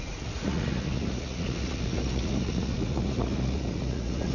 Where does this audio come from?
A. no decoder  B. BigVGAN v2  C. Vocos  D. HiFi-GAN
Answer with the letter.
C